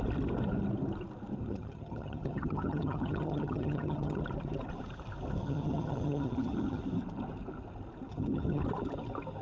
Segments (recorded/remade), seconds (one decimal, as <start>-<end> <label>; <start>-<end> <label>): 0.0-1.4 recorded; 1.4-4.2 remade; 4.2-5.4 recorded; 5.4-6.8 remade; 6.8-8.1 recorded; 8.1-8.6 remade; 8.6-9.4 recorded